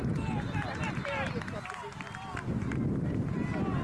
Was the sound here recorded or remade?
recorded